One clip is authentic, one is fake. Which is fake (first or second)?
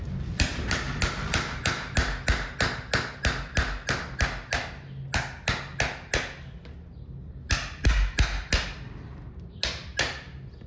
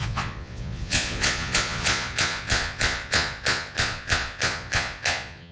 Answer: second